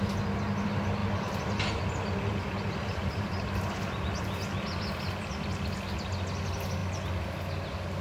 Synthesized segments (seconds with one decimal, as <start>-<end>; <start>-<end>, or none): 2.3-4.1